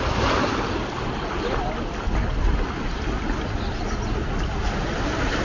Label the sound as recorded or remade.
recorded